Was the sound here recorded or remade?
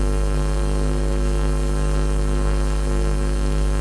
remade